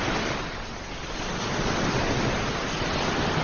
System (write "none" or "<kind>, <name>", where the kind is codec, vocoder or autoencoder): none